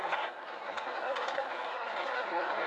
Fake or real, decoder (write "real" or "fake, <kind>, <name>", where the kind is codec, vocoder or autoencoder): fake, codec, SNAC